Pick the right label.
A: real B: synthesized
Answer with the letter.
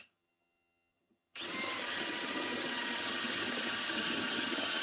B